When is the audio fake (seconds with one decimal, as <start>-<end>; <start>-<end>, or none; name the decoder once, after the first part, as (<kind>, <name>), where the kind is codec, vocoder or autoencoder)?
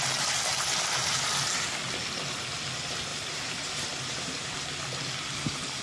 0.5-1.7 (vocoder, BigVGAN v2); 3.1-4.5